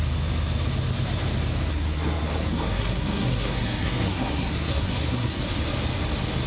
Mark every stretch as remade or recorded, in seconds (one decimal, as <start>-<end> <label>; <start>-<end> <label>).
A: 0.0-1.7 recorded; 1.7-5.4 remade; 5.4-6.5 recorded